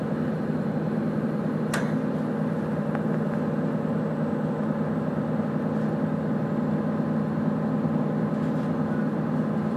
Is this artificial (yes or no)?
no